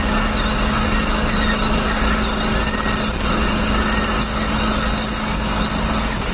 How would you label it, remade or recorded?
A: recorded